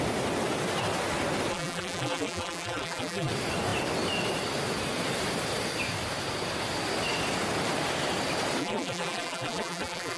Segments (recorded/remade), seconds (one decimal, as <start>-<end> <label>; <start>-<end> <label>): 0.0-1.5 recorded; 1.5-3.3 remade; 3.3-8.6 recorded; 8.6-10.2 remade